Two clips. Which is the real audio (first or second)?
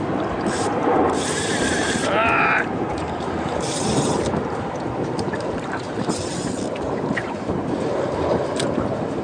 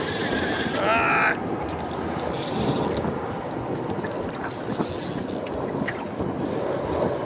second